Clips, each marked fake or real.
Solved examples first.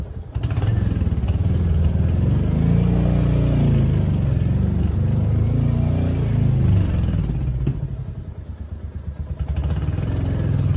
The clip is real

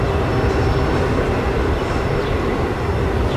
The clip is real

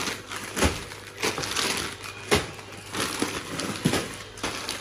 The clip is real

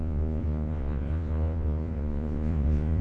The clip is fake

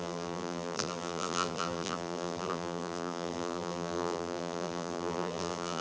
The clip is fake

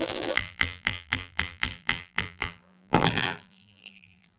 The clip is fake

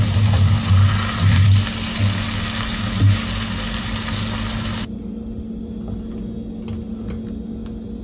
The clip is real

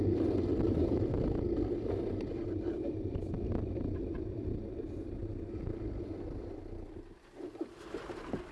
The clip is fake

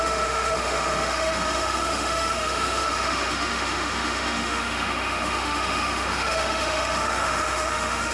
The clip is fake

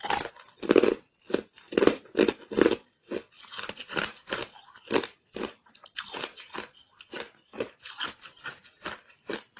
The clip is real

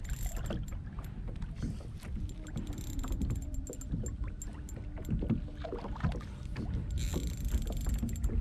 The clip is real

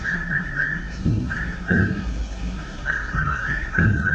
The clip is fake